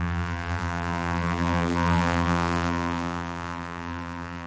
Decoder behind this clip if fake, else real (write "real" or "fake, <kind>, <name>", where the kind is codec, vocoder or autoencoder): fake, vocoder, BigVGAN v2